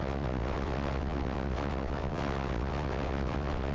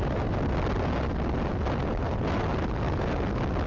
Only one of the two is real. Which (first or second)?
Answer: second